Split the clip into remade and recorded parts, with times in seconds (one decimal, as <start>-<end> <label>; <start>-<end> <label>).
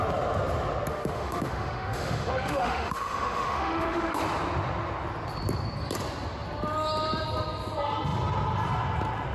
0.0-0.9 recorded; 0.9-4.2 remade; 4.2-9.3 recorded